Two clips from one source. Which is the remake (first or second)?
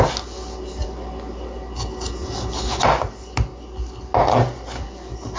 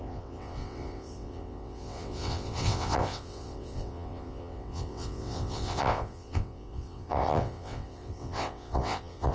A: second